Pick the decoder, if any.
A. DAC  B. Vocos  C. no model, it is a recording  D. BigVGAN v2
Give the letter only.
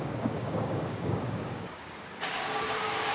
A